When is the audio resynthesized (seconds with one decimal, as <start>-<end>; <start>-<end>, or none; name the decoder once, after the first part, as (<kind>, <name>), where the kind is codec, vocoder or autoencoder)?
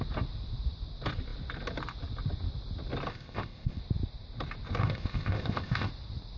3.1-3.8 (codec, ZipCodec); 4.8-5.9